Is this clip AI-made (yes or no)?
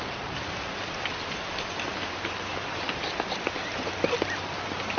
no